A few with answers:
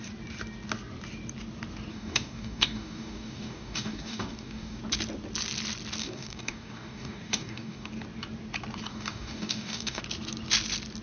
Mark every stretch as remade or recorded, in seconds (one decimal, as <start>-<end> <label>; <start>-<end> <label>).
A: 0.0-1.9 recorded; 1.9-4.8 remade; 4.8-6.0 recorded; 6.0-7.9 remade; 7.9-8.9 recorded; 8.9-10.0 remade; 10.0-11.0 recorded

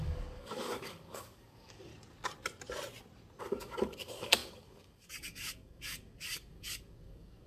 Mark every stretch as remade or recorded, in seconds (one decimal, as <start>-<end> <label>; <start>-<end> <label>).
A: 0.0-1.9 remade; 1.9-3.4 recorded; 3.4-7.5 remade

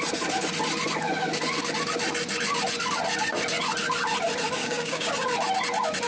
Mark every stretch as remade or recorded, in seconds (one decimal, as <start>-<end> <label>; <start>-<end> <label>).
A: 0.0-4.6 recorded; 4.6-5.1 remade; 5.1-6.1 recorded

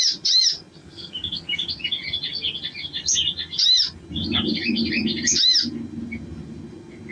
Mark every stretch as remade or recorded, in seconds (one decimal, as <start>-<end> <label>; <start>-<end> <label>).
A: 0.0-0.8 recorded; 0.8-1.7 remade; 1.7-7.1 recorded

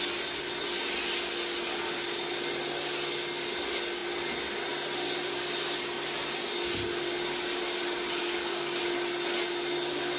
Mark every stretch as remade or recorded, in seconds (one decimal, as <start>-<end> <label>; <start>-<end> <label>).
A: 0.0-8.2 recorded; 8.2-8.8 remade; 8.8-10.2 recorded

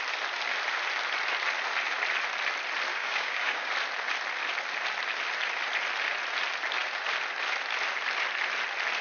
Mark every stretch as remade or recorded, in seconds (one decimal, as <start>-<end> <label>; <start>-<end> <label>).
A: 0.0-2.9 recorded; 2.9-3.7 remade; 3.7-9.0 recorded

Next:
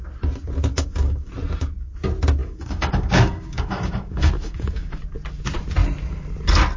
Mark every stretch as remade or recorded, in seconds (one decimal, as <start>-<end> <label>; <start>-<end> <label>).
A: 0.0-0.7 recorded; 0.7-1.3 remade; 1.3-2.4 recorded; 2.4-5.0 remade; 5.0-6.8 recorded